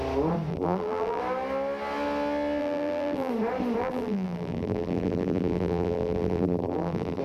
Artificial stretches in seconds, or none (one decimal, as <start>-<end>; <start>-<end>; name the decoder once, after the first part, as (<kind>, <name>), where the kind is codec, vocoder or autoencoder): 0.5-1.2 (vocoder, BigVGAN v2); 2.6-3.3; 3.8-7.2